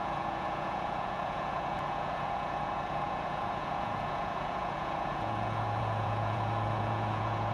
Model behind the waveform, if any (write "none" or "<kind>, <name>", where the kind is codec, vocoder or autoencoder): vocoder, Vocos